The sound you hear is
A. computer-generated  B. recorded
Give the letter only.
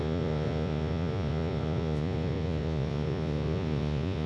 A